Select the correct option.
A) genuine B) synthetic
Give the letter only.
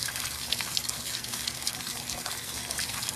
B